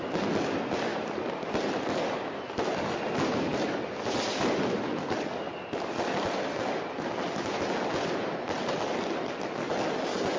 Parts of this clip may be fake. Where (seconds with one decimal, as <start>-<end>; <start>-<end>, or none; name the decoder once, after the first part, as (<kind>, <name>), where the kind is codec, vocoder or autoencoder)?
0.9-1.7 (vocoder, BigVGAN v2)